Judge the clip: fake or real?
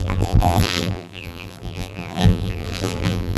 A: fake